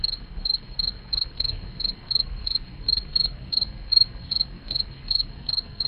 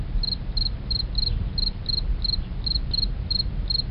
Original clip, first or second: second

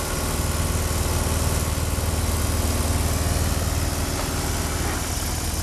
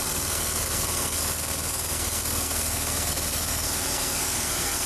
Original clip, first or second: first